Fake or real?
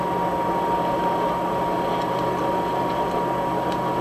real